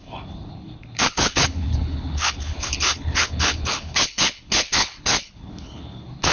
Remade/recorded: remade